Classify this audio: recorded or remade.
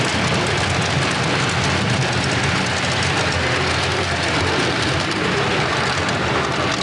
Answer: recorded